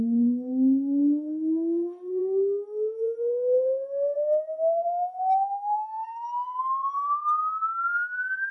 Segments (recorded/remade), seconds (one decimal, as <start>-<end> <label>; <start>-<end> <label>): 0.0-7.2 remade; 7.2-7.9 recorded; 7.9-8.5 remade